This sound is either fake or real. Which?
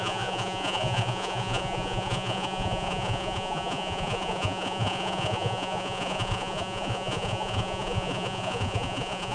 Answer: fake